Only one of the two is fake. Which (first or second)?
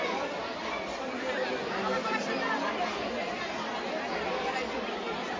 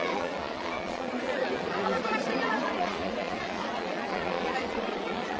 second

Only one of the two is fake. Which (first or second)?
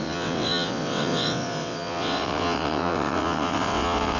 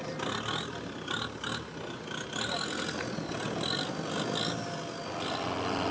first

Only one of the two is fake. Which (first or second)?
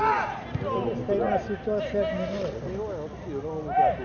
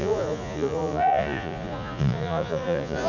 second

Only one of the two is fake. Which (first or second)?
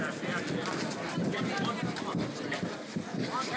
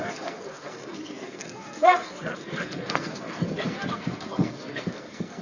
second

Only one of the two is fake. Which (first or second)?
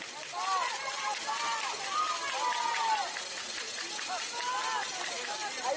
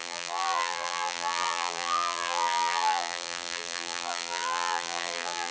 second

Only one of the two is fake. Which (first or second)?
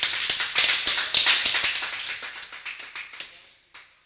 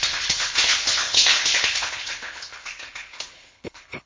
second